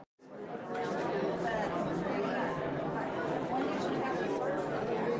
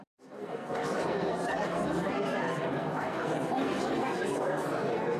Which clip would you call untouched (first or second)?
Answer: first